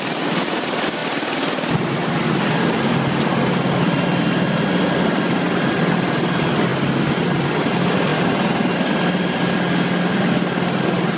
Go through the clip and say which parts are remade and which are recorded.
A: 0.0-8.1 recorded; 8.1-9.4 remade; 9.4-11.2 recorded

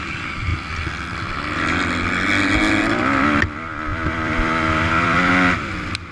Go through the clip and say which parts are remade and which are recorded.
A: 0.0-3.9 recorded; 3.9-5.3 remade; 5.3-6.1 recorded

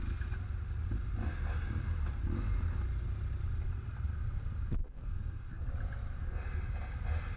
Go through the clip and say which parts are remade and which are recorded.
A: 0.0-4.8 recorded; 4.8-5.7 remade; 5.7-7.4 recorded

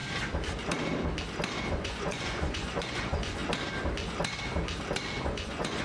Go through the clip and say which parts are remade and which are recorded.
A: 0.0-1.7 recorded; 1.7-3.4 remade; 3.4-5.2 recorded; 5.2-5.8 remade

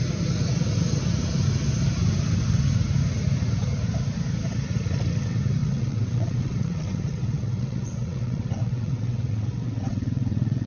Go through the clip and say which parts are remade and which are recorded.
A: 0.0-5.6 recorded; 5.6-10.7 remade

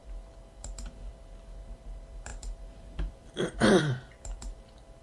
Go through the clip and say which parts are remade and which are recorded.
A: 0.0-2.3 recorded; 2.3-3.8 remade; 3.8-5.0 recorded

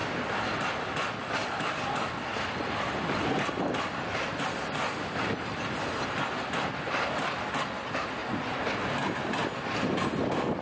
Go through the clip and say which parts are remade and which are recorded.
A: 0.0-10.6 recorded

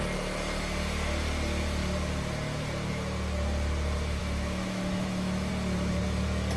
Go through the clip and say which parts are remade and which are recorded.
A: 0.0-4.2 recorded; 4.2-5.5 remade; 5.5-6.6 recorded